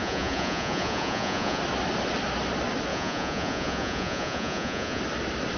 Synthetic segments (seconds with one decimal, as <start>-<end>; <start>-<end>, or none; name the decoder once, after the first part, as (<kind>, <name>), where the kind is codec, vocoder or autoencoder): 0.0-1.6 (vocoder, Vocos); 2.9-5.0